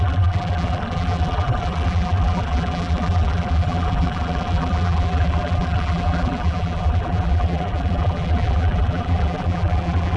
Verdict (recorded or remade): remade